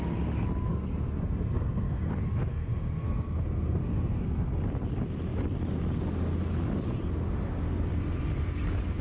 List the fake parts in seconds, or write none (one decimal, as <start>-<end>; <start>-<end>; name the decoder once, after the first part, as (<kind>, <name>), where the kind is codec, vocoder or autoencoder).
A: 0.7-2.1 (codec, SNAC); 2.5-4.6